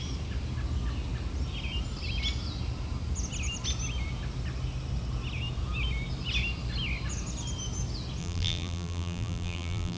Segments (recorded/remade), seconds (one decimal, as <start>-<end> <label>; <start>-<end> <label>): 0.0-8.2 recorded; 8.2-10.0 remade